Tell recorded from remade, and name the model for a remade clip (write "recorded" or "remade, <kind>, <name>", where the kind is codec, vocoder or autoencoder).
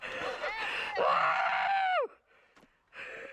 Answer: recorded